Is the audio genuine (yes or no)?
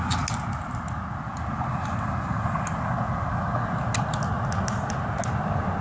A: yes